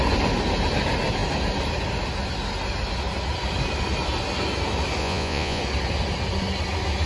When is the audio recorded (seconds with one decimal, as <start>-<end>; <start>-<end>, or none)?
0.0-5.0; 5.6-7.1